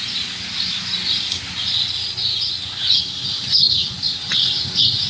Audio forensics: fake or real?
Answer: real